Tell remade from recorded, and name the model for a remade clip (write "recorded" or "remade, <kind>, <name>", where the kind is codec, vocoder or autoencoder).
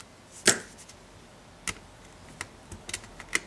recorded